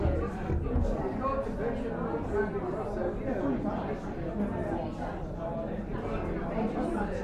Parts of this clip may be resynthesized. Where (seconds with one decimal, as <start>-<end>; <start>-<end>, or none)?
4.6-5.4